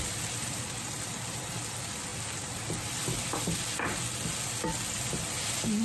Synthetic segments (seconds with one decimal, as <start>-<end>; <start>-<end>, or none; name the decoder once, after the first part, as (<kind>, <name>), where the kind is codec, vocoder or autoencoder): none